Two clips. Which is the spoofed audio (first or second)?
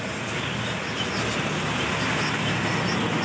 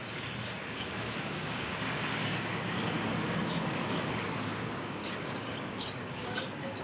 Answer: second